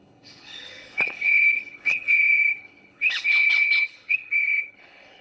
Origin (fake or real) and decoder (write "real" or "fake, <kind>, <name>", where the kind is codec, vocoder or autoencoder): fake, codec, HILCodec